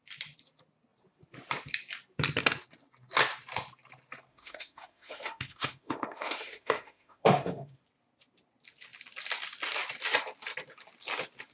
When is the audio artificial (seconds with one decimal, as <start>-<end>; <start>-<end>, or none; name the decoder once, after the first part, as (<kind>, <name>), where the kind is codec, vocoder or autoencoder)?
4.3-7.8 (autoencoder, DAC-VAE)